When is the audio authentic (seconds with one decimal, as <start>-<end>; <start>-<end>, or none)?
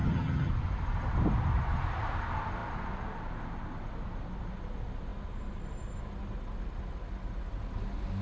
0.5-8.2